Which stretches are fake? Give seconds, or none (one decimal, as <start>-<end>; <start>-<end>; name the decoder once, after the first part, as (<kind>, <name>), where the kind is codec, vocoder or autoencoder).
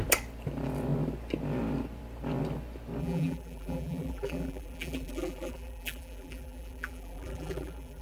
3.0-8.0 (vocoder, BigVGAN v2)